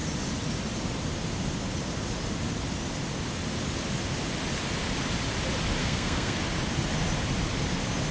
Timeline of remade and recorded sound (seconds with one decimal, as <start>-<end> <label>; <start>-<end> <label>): 0.0-5.8 recorded; 5.8-6.4 remade; 6.4-8.1 recorded